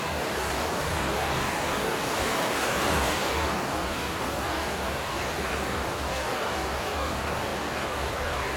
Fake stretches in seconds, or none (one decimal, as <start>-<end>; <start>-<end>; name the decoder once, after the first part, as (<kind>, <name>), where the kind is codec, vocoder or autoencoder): 0.0-8.6 (codec, DAC)